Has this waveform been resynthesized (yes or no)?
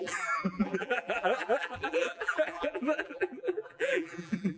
yes